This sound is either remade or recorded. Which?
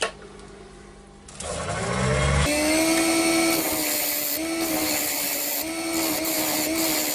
recorded